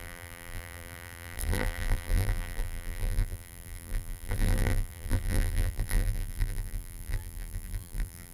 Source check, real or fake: fake